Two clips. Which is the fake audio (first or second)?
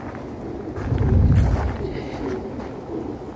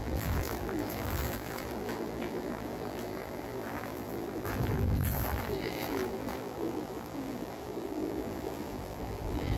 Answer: second